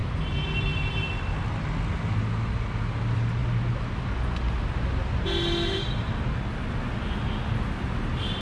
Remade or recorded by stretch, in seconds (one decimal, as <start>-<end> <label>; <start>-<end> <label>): 0.0-1.7 remade; 1.7-8.4 recorded